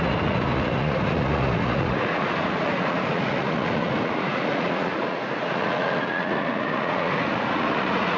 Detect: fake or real fake